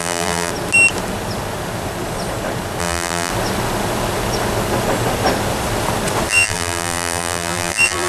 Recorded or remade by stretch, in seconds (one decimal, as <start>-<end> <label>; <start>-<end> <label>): 0.0-0.5 remade; 0.5-2.8 recorded; 2.8-3.3 remade; 3.3-6.3 recorded; 6.3-8.1 remade